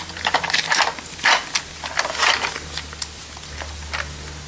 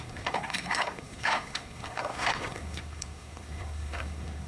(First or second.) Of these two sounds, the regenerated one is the second